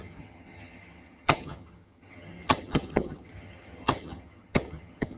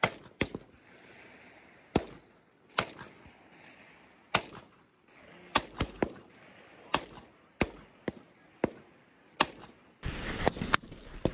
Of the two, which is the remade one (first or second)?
first